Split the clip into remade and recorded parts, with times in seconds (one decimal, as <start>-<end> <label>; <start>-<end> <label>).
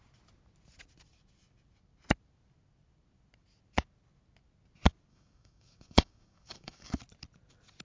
0.0-5.1 recorded; 5.1-7.0 remade; 7.0-7.8 recorded